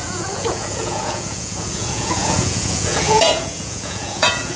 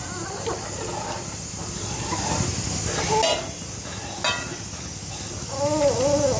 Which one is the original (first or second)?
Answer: second